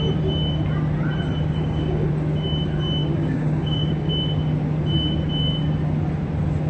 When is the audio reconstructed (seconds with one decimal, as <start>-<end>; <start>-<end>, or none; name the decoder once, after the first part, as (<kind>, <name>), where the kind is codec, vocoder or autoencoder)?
1.6-2.1 (codec, DAC); 3.0-4.1

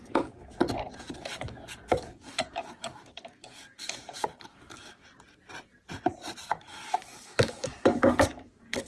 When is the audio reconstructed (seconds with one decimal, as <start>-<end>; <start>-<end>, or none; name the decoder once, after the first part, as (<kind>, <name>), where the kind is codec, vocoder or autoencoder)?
0.0-5.0 (codec, DAC); 6.6-8.9